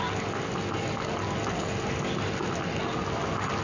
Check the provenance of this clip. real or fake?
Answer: real